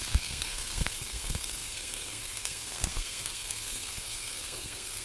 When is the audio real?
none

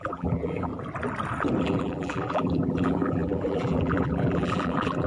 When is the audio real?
0.7-1.6